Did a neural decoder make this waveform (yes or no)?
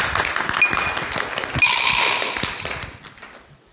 no